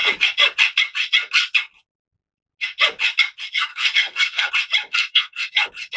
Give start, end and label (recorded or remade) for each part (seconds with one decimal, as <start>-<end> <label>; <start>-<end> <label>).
0.0-3.7 recorded; 3.7-4.5 remade; 4.5-4.9 recorded; 4.9-5.5 remade; 5.5-6.0 recorded